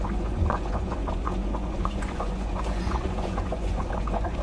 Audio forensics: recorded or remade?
remade